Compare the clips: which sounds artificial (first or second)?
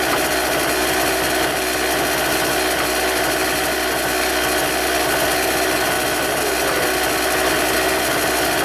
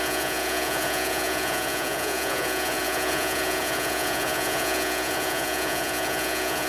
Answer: second